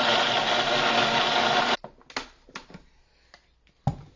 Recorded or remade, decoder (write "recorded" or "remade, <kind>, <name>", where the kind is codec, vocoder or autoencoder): recorded